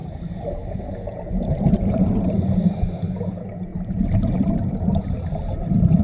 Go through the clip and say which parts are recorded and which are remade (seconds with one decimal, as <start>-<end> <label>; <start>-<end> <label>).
0.0-2.2 remade; 2.2-3.7 recorded; 3.7-4.7 remade; 4.7-6.0 recorded